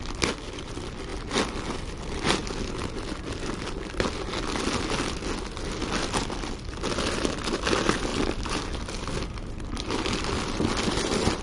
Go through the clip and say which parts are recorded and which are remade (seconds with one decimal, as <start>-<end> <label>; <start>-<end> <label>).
0.0-11.4 recorded